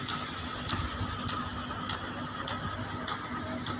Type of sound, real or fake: real